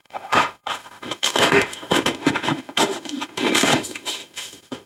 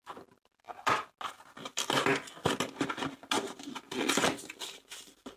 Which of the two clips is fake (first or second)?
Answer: first